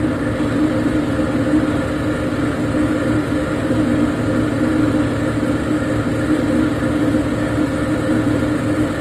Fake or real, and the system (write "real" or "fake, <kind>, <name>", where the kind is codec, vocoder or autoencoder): real